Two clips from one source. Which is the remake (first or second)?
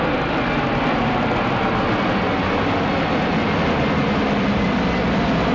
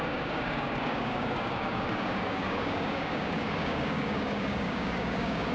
second